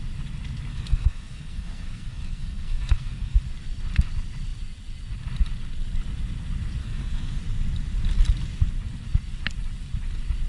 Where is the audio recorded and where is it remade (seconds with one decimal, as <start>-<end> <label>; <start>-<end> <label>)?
0.0-0.7 recorded; 0.7-3.4 remade; 3.4-6.8 recorded; 6.8-7.4 remade; 7.4-10.5 recorded